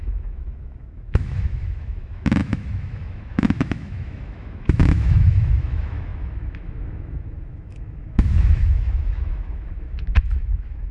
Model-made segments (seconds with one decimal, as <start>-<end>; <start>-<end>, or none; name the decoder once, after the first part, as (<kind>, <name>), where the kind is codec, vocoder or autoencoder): 0.0-10.9 (autoencoder, DAC-VAE)